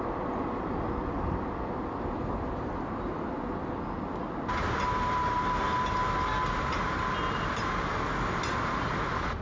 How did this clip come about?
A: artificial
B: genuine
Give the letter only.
B